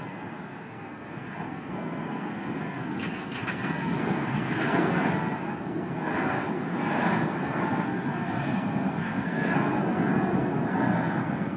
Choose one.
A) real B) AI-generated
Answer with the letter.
B